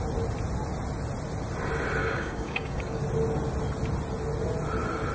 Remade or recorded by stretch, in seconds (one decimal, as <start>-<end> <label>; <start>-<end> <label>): 0.0-2.0 recorded; 2.0-3.0 remade; 3.0-5.1 recorded